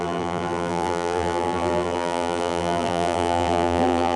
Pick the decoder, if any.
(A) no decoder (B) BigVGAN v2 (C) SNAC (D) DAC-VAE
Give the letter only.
B